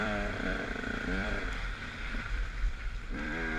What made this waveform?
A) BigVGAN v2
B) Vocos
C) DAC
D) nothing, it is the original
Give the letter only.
A